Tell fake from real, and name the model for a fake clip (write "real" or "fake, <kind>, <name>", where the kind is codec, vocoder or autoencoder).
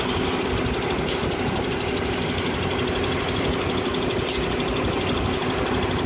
real